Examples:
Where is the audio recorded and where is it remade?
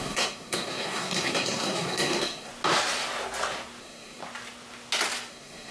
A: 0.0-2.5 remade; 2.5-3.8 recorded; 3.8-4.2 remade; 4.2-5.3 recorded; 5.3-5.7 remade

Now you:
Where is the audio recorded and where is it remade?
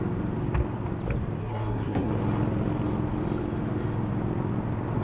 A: 0.0-1.4 recorded; 1.4-2.1 remade; 2.1-5.0 recorded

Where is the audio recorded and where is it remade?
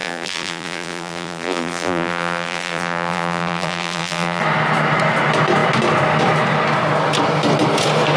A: 0.0-4.4 remade; 4.4-8.2 recorded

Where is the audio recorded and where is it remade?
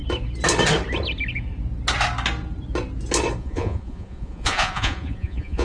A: 0.0-3.4 recorded; 3.4-5.6 remade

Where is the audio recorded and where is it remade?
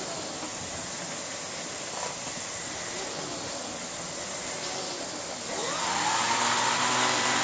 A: 0.0-7.4 recorded